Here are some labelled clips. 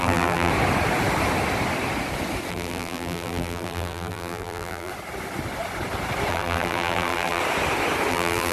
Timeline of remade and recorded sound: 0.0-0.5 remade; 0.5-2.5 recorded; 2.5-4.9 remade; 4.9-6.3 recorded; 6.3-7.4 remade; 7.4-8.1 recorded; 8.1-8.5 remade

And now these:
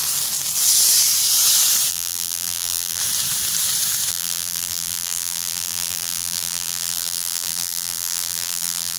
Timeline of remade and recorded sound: 0.0-1.9 recorded; 1.9-3.0 remade; 3.0-4.1 recorded; 4.1-9.0 remade